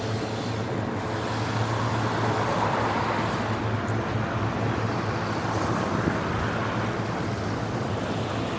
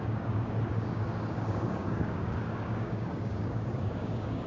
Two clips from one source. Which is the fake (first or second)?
second